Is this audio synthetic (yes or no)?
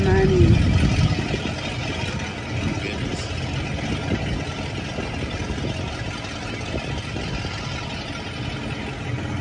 no